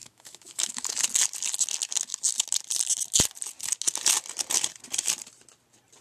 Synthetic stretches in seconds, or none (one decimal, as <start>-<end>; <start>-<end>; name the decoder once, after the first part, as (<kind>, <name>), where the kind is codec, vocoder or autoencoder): 0.0-0.9 (autoencoder, DAC-VAE)